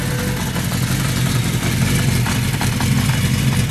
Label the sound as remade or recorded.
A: recorded